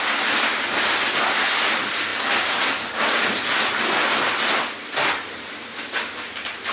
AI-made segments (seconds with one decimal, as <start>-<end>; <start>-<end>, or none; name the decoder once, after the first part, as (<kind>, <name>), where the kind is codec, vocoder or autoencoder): none